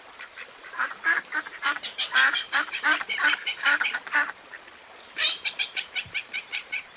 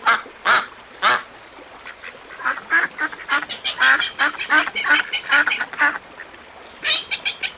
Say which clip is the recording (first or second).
second